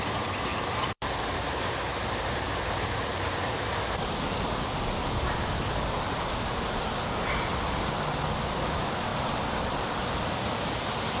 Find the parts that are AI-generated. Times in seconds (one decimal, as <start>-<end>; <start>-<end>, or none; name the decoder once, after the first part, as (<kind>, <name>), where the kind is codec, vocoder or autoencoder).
0.5-4.7 (vocoder, BigVGAN v2); 9.1-10.0